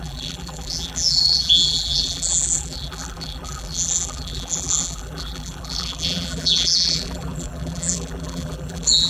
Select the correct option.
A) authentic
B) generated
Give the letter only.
B